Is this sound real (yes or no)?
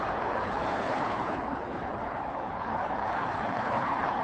no